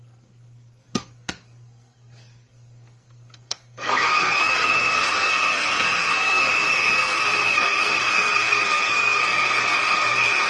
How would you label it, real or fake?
fake